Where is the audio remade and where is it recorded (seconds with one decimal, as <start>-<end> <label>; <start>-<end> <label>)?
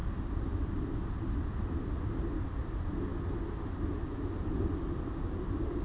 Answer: 0.0-5.8 recorded